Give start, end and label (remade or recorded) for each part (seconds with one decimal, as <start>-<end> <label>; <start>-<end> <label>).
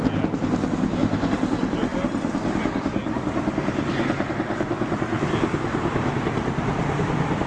0.0-7.5 recorded